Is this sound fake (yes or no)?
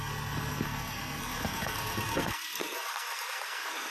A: yes